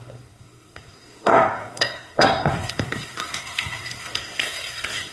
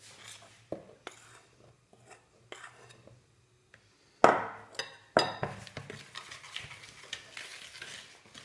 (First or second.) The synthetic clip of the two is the first